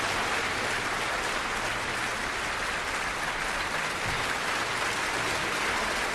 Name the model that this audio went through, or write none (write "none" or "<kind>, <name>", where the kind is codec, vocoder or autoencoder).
none